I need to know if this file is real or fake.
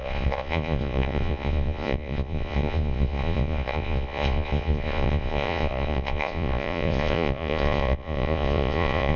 fake